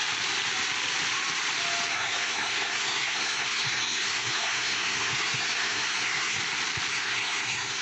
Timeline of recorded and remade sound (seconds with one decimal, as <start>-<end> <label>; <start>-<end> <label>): 0.0-1.9 recorded; 1.9-6.4 remade; 6.4-6.9 recorded; 6.9-7.8 remade